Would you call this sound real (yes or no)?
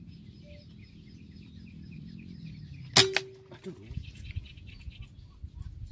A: yes